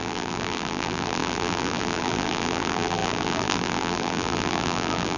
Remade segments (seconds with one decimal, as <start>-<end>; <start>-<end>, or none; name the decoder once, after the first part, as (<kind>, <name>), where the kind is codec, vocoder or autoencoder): 0.0-5.2 (vocoder, BigVGAN v2)